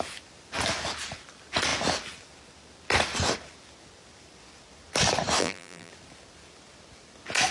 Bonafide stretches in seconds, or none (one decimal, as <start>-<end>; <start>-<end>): 0.0-5.4; 5.9-7.5